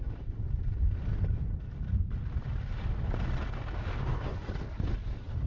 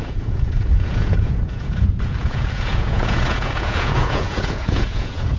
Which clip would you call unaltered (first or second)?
first